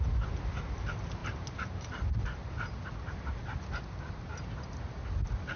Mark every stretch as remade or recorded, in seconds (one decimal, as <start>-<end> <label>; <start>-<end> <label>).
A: 0.0-5.6 recorded